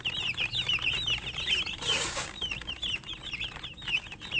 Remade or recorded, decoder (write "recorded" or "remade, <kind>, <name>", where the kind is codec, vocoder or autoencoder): remade, vocoder, BigVGAN v2